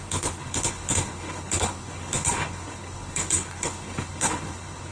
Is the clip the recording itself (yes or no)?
no